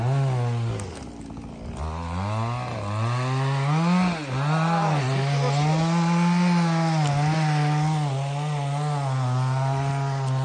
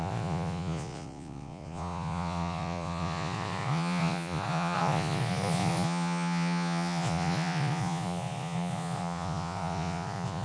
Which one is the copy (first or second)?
second